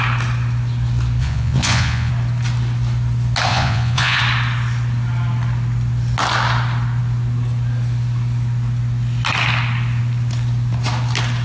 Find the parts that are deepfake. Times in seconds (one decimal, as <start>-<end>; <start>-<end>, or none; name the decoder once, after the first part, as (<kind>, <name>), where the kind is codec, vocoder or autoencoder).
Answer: 1.2-2.1 (vocoder, Vocos); 3.5-4.2